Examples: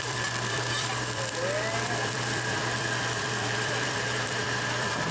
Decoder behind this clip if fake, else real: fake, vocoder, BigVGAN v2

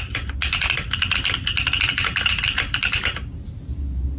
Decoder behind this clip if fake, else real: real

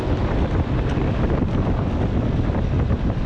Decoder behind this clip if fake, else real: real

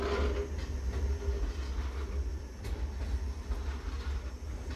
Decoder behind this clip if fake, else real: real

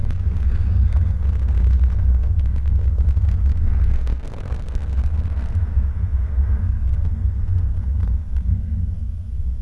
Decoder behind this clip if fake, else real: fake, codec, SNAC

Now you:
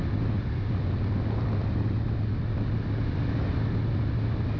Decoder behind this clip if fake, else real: real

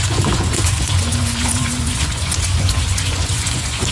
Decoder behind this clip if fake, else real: fake, vocoder, Vocos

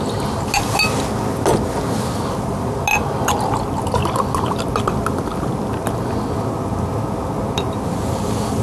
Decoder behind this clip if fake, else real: real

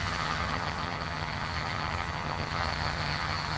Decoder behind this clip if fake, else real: fake, vocoder, HiFi-GAN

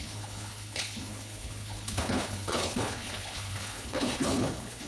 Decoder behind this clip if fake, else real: fake, codec, HILCodec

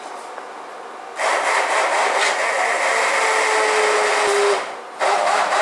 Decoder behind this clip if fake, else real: real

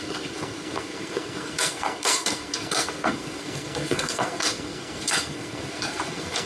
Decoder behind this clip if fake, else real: fake, codec, SNAC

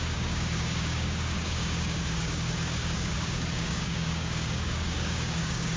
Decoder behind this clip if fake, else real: fake, codec, DAC